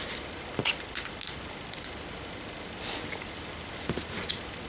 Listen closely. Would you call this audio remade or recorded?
recorded